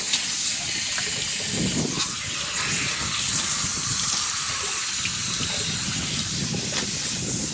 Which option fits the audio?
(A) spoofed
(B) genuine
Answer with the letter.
B